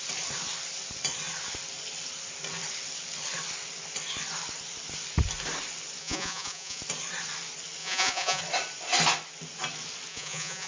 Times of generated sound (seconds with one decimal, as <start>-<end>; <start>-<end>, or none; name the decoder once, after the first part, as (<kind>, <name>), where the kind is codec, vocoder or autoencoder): 6.0-6.8 (vocoder, Vocos); 7.8-8.4; 10.1-10.7